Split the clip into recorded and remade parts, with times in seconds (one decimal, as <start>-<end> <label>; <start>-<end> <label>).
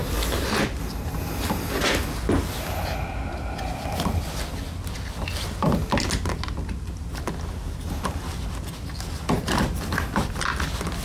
0.0-11.0 recorded